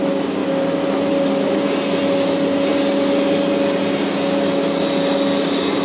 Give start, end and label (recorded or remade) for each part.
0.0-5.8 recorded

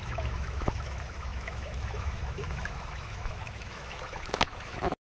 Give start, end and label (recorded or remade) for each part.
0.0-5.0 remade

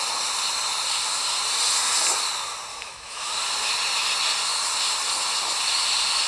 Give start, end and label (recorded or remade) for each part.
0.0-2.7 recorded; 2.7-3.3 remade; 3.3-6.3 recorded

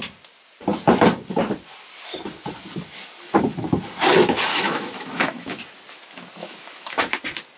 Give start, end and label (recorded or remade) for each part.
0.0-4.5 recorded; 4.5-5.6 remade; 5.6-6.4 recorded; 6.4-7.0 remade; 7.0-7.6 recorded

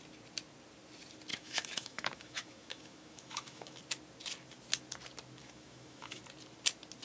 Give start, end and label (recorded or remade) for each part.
0.0-1.3 recorded; 1.3-3.8 remade; 3.8-5.4 recorded; 5.4-6.2 remade; 6.2-7.0 recorded

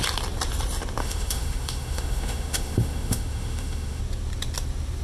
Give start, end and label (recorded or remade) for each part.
0.0-1.0 recorded; 1.0-4.0 remade; 4.0-5.0 recorded